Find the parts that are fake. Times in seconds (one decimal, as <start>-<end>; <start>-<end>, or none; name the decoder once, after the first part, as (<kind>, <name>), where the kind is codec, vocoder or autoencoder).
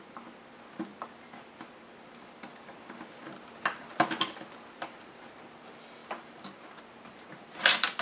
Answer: 0.9-1.7 (vocoder, BigVGAN v2); 2.5-4.0; 6.0-6.8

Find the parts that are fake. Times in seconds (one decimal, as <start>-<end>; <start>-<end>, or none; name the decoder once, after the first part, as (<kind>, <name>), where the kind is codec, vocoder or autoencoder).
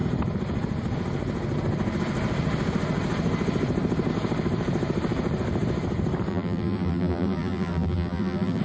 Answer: 6.3-8.6 (vocoder, BigVGAN v2)